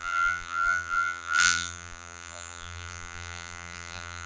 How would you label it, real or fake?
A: fake